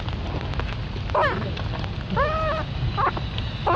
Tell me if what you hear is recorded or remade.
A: recorded